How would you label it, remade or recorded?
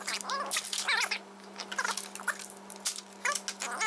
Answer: recorded